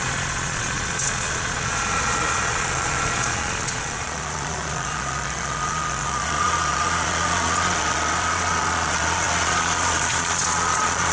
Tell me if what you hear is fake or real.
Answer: fake